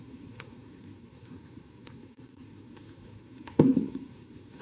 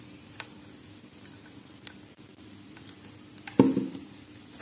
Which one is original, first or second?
second